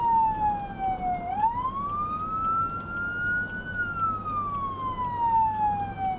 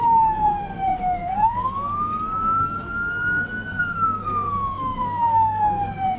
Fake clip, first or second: second